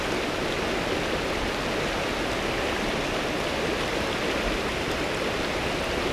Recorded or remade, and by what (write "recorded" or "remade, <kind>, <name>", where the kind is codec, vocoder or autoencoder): recorded